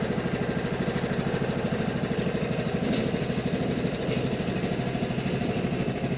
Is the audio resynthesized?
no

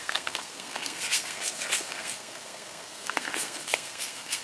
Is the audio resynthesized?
yes